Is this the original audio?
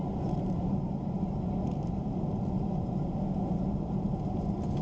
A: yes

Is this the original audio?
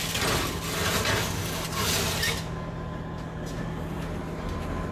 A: yes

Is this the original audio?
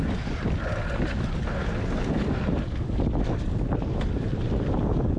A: yes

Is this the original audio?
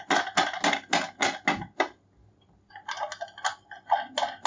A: yes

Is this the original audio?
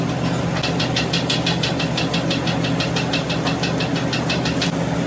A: yes